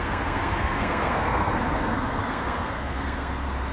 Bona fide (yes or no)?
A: no